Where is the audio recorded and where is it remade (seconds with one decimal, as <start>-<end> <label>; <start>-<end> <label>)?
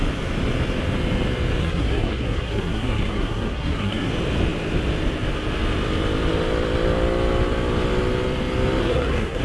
0.0-1.6 recorded; 1.6-4.1 remade; 4.1-8.8 recorded; 8.8-9.4 remade